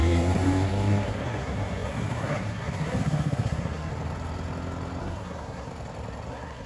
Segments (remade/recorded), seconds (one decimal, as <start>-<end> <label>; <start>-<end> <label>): 0.0-3.9 remade; 3.9-5.0 recorded; 5.0-5.7 remade; 5.7-6.3 recorded; 6.3-6.7 remade